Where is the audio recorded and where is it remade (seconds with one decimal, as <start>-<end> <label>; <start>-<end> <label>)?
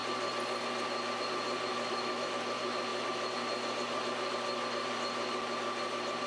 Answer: 0.0-1.7 recorded; 1.7-2.3 remade; 2.3-6.3 recorded